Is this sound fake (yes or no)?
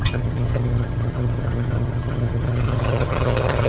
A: yes